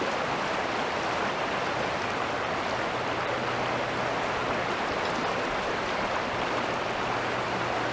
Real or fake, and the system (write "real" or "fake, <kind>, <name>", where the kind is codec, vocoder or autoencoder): real